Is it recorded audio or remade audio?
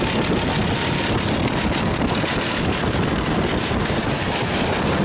recorded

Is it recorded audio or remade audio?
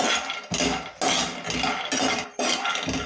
recorded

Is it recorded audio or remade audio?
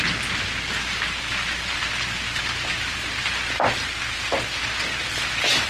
recorded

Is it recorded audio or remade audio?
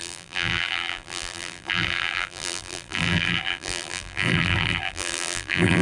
remade